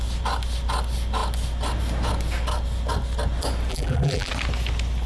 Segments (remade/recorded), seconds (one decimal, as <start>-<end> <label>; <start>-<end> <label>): 0.0-3.7 recorded; 3.7-4.3 remade; 4.3-5.1 recorded